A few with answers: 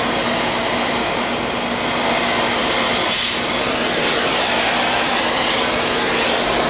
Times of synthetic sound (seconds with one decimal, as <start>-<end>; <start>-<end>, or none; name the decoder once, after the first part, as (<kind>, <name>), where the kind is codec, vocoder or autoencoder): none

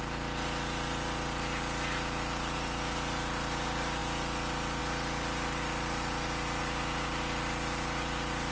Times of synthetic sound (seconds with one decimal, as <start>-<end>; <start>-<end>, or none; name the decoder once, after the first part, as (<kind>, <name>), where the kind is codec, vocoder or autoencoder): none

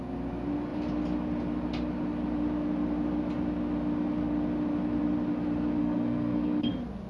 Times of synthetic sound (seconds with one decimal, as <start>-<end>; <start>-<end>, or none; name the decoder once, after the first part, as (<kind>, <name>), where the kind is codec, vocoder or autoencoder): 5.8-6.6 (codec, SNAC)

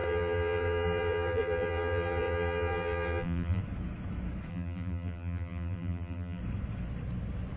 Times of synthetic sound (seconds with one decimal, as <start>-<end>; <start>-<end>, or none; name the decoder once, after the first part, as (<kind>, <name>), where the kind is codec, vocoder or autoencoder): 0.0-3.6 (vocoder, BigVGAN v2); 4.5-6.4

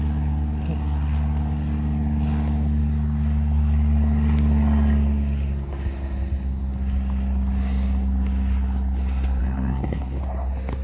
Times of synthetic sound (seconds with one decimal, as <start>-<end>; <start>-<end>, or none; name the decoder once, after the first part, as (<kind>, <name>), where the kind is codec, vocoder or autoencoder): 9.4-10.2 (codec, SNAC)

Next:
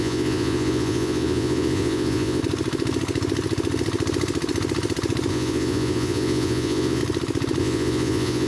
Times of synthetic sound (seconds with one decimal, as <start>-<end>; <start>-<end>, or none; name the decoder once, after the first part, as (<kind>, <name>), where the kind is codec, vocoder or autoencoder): 0.0-2.4 (vocoder, Vocos); 5.3-7.0; 7.6-8.5

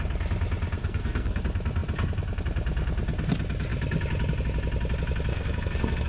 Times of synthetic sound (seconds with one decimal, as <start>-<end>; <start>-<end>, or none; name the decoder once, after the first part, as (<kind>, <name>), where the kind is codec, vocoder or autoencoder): 0.8-1.4 (codec, SNAC); 5.3-6.1

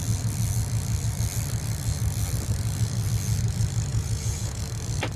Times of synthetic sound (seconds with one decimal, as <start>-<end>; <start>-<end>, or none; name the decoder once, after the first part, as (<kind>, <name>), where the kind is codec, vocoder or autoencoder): 3.9-4.6 (vocoder, Vocos)